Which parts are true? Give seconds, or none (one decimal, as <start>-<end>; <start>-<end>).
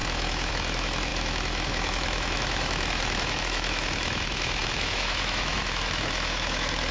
none